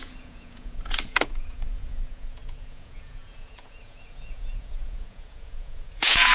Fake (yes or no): yes